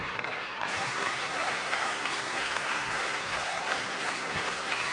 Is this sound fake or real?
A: fake